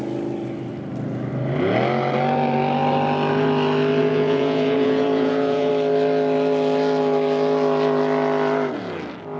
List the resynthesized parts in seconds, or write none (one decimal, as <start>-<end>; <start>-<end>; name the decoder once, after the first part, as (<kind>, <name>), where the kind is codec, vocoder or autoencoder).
4.0-5.7 (vocoder, Vocos)